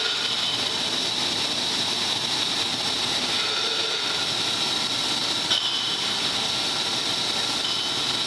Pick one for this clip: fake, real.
real